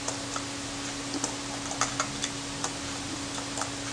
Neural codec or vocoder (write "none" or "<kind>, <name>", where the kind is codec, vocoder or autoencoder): none